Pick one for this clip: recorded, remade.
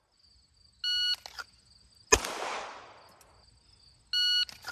recorded